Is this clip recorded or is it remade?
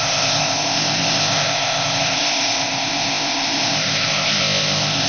remade